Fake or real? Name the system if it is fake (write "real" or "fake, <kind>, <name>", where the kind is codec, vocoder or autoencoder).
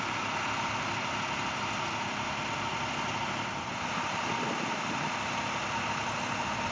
real